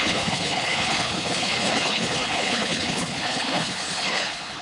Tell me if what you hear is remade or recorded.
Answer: remade